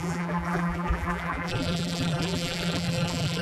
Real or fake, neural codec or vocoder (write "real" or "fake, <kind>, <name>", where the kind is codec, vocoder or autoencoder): fake, vocoder, BigVGAN v2